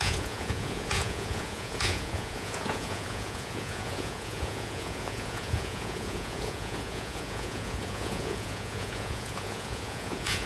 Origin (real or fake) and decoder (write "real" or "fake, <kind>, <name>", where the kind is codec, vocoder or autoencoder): fake, vocoder, Vocos